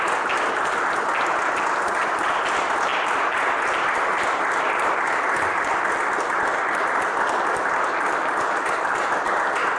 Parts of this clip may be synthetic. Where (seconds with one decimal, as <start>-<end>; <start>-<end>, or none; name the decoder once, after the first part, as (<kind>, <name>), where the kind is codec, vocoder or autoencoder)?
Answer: none